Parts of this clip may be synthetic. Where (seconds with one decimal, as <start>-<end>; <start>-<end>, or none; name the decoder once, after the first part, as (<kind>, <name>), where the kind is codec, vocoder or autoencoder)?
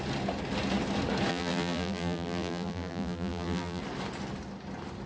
1.3-3.8 (vocoder, BigVGAN v2)